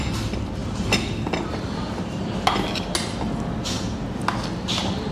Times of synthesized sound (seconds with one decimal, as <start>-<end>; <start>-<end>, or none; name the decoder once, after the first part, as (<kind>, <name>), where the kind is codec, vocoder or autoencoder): 0.6-2.2 (vocoder, BigVGAN v2)